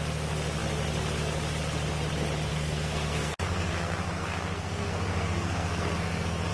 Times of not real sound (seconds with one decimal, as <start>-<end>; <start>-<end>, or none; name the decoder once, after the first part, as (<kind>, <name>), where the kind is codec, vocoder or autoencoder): 2.5-6.5 (codec, SNAC)